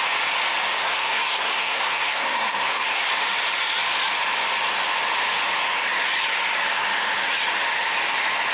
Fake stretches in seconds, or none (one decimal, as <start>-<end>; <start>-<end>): 0.8-3.1